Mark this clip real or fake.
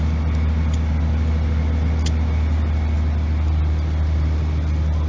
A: real